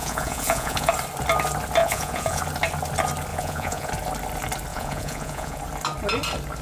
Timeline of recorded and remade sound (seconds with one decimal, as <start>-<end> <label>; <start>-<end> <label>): 0.0-0.9 remade; 0.9-1.8 recorded; 1.8-2.4 remade; 2.4-3.3 recorded; 3.3-3.9 remade; 3.9-4.7 recorded; 4.7-5.6 remade; 5.6-6.6 recorded

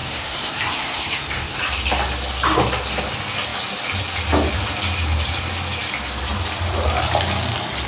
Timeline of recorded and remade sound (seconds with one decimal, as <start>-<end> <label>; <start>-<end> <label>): 0.0-1.6 remade; 1.6-7.9 recorded

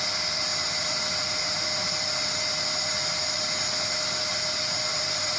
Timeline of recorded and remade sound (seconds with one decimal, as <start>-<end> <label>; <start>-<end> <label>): 0.0-4.9 recorded; 4.9-5.4 remade